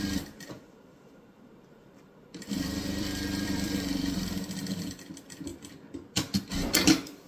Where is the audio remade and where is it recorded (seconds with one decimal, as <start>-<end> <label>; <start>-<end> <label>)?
0.0-5.5 remade; 5.5-7.3 recorded